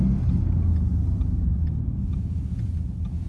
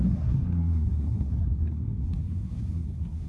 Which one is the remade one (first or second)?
second